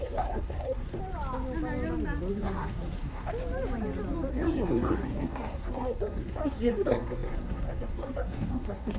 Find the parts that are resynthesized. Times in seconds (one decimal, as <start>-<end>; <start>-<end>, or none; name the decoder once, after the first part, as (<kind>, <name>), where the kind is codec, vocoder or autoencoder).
0.0-1.0 (codec, SNAC); 2.3-3.3; 4.3-9.0